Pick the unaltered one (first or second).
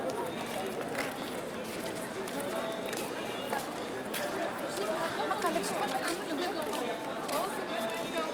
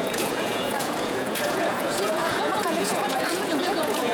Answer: first